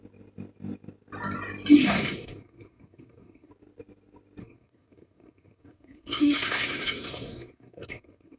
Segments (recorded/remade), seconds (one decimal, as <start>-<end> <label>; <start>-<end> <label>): 0.0-1.8 recorded; 1.8-3.5 remade; 3.5-4.4 recorded; 4.4-8.4 remade